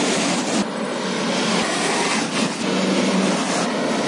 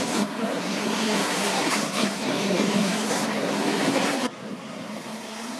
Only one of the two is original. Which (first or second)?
first